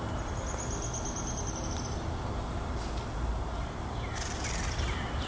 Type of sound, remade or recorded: recorded